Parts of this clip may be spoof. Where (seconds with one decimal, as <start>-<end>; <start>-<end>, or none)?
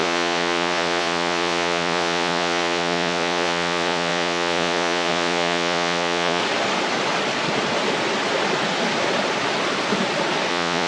0.0-6.4; 10.5-10.9